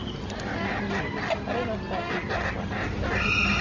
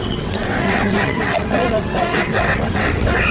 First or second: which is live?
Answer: first